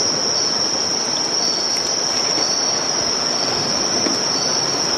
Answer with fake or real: real